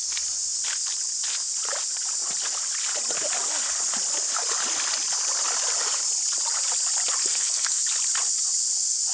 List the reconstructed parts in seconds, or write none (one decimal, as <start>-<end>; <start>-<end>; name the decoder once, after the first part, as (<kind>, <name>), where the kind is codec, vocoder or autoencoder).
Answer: 7.2-7.8 (codec, SNAC)